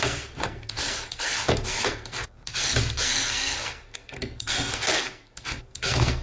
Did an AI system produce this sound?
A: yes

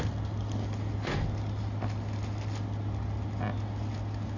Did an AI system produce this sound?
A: no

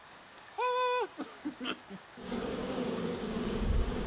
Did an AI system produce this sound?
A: yes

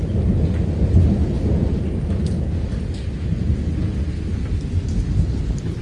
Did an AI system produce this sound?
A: no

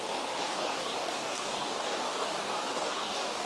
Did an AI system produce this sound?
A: yes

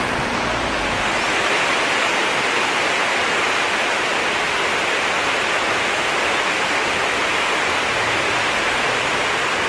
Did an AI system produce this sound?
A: no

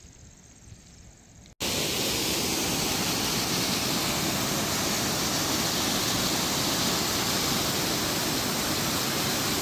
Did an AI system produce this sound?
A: no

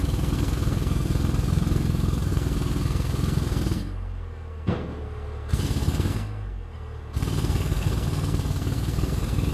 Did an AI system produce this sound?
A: yes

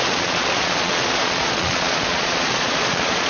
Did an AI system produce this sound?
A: yes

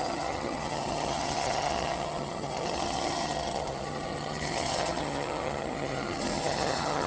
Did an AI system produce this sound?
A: yes